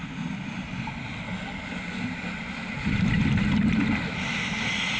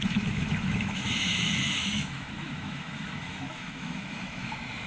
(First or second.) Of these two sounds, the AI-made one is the second